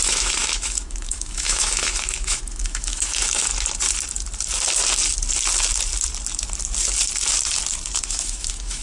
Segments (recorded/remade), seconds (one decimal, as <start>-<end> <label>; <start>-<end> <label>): 0.0-3.5 remade; 3.5-8.0 recorded; 8.0-8.8 remade